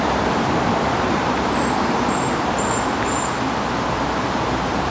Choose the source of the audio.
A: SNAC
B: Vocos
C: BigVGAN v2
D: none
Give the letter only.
C